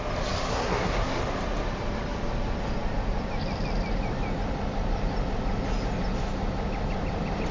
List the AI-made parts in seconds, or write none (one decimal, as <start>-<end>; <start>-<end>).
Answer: 0.5-1.2